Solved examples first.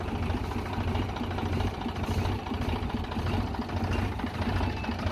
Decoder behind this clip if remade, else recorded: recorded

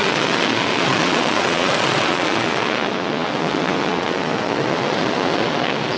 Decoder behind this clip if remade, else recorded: remade, vocoder, Vocos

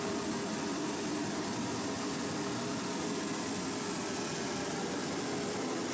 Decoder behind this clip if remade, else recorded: recorded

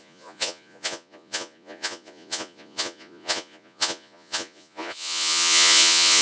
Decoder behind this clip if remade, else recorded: remade, vocoder, Vocos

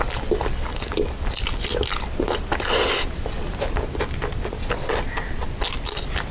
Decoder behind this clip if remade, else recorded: recorded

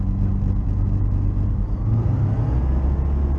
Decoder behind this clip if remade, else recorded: recorded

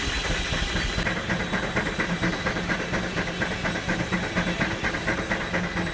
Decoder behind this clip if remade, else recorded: recorded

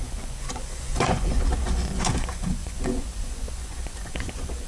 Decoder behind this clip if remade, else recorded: remade, vocoder, Vocos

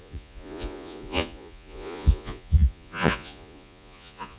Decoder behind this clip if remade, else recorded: remade, vocoder, Vocos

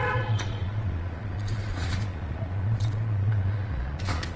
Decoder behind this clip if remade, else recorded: remade, vocoder, Vocos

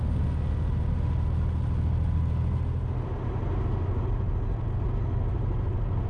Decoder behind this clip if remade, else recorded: recorded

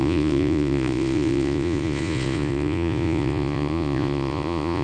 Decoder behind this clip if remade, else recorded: remade, vocoder, Vocos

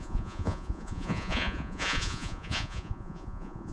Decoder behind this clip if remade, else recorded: remade, vocoder, Vocos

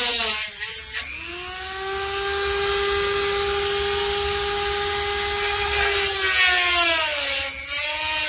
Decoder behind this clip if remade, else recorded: recorded